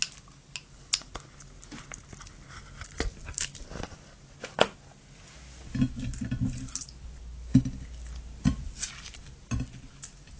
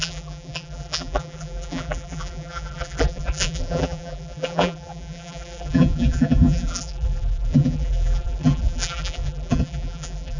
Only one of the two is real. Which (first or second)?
first